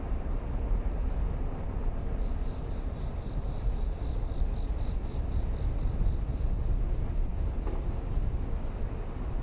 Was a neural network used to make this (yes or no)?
no